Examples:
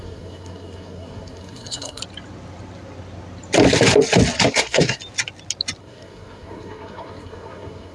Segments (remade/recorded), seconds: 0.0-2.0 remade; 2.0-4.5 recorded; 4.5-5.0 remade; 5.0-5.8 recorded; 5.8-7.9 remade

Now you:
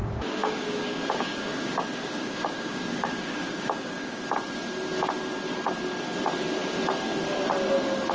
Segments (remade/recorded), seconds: 0.0-4.2 remade; 4.2-8.1 recorded

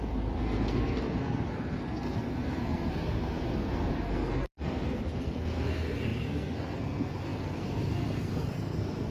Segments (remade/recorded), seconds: 0.0-9.1 remade

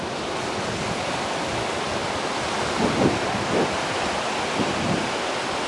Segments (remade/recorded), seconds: 0.0-5.7 recorded

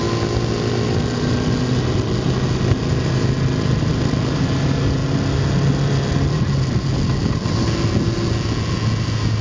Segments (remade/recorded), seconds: 0.0-9.4 recorded